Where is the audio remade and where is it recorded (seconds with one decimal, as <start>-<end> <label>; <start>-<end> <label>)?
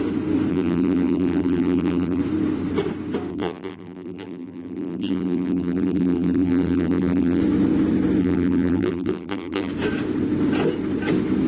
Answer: 0.0-0.5 recorded; 0.5-2.2 remade; 2.2-3.3 recorded; 3.3-7.4 remade; 7.4-8.2 recorded; 8.2-9.7 remade; 9.7-11.5 recorded